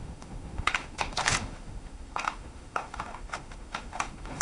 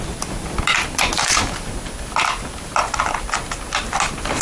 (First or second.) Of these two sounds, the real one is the second